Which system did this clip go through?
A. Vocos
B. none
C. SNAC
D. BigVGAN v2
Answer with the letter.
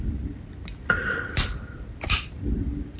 D